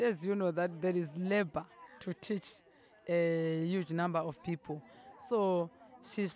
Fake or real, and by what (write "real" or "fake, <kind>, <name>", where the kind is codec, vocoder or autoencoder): real